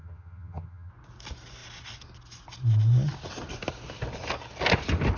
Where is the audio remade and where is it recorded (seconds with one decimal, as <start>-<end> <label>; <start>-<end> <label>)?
0.0-0.9 remade; 0.9-5.2 recorded